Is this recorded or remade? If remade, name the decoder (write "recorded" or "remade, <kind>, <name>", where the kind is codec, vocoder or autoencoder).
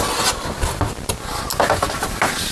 recorded